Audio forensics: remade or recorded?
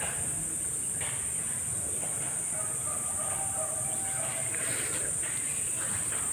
recorded